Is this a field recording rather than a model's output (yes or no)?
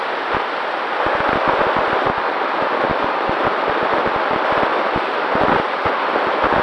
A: no